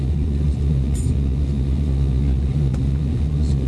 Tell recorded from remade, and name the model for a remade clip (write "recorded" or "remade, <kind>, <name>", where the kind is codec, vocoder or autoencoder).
remade, vocoder, Vocos